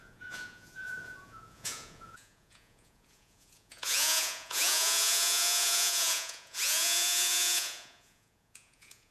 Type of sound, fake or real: fake